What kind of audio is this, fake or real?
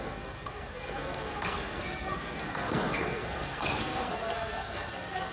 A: fake